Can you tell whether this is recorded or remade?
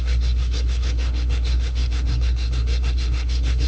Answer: remade